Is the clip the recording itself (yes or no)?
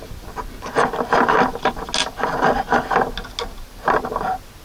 yes